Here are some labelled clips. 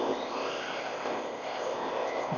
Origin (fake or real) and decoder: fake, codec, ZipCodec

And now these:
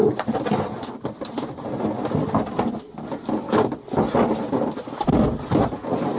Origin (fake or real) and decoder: real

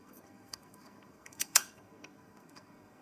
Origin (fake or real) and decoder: fake, codec, SNAC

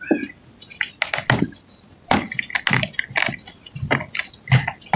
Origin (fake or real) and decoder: real